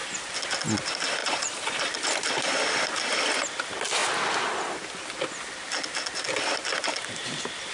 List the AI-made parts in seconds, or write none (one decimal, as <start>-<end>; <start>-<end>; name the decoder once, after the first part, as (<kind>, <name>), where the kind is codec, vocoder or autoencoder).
1.2-1.8 (vocoder, BigVGAN v2)